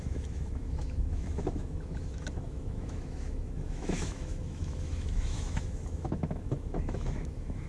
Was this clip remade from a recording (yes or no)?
yes